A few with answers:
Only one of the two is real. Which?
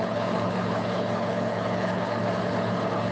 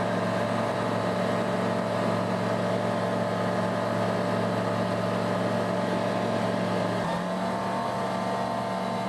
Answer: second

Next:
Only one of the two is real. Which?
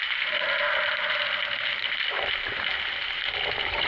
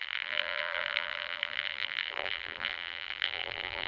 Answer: first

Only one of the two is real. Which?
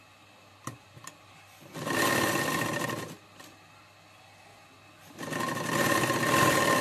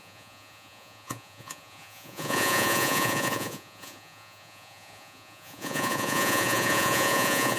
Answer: first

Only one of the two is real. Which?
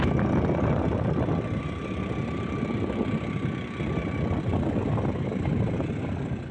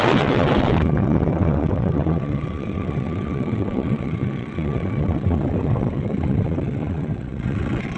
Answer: first